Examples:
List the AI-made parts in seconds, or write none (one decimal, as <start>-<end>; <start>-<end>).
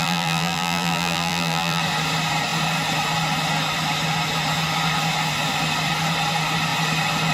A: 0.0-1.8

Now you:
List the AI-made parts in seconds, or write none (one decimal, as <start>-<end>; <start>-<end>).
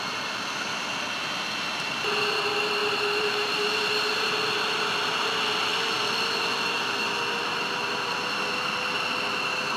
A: 2.8-3.7; 7.5-8.1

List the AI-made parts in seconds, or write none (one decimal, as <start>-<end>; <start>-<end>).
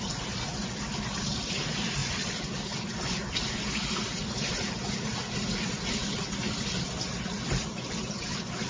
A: none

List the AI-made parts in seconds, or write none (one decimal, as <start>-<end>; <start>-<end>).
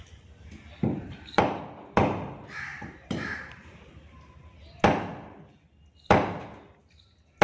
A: 0.8-1.6; 2.7-3.8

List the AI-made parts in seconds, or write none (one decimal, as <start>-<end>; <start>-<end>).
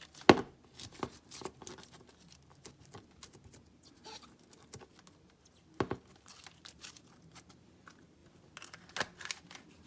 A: none